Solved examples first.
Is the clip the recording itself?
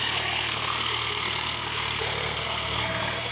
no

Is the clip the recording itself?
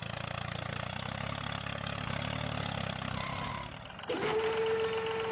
yes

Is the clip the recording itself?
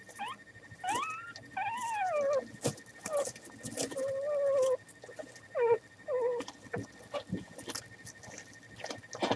yes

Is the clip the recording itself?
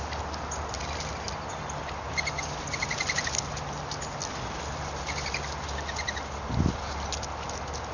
yes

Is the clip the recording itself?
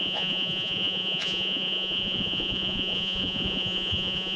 no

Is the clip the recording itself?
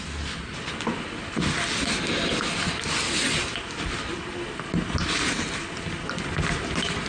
yes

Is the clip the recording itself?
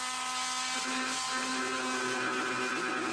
yes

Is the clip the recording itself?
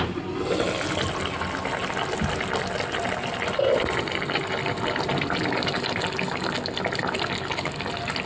yes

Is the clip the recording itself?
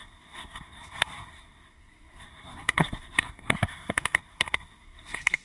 no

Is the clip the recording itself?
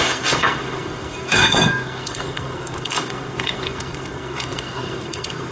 no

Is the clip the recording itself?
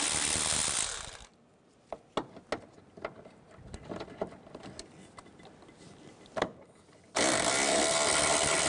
yes